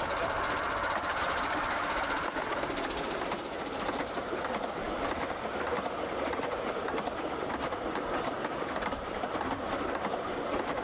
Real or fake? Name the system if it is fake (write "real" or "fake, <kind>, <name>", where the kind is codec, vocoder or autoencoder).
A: real